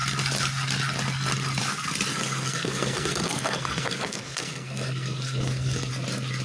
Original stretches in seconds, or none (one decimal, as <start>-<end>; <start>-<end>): 0.0-2.1; 5.9-6.4